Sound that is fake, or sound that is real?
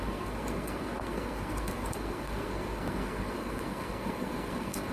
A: fake